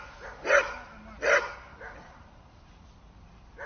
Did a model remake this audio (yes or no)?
no